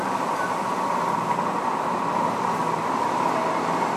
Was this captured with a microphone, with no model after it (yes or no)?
yes